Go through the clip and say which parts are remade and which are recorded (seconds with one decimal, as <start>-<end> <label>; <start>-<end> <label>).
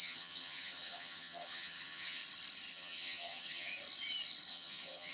0.0-2.2 remade; 2.2-2.7 recorded; 2.7-3.7 remade; 3.7-4.5 recorded; 4.5-5.1 remade